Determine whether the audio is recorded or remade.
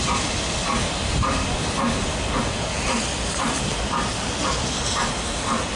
recorded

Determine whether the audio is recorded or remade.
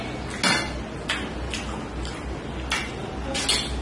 recorded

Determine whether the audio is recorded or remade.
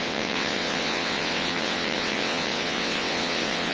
remade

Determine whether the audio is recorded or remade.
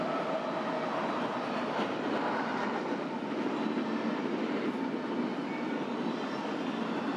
recorded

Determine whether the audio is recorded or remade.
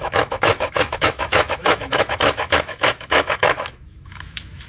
remade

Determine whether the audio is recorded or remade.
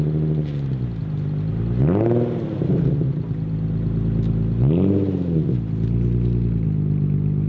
recorded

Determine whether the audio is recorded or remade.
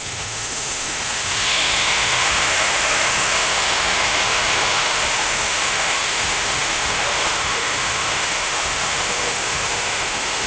remade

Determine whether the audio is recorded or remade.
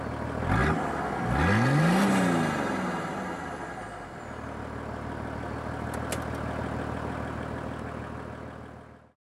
recorded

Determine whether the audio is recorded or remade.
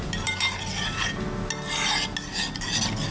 recorded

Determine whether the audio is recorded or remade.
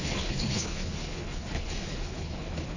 remade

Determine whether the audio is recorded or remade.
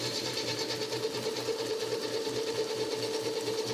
remade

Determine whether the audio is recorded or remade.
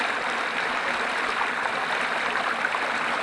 recorded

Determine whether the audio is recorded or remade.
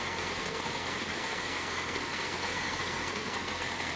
remade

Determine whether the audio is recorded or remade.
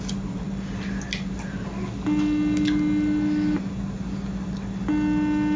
recorded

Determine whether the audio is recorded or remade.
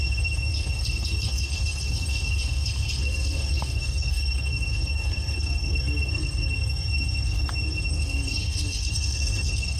remade